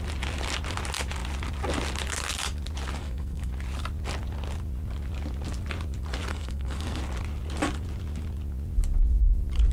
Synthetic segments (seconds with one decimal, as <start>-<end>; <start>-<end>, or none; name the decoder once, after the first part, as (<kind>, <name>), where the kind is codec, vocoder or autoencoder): 3.0-3.5 (codec, SNAC); 6.3-7.0